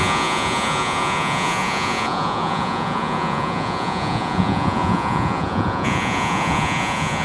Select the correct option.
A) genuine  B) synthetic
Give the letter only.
B